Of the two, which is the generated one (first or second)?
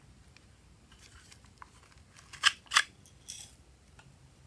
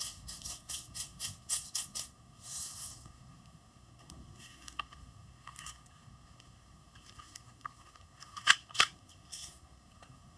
second